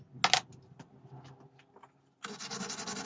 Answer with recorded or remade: recorded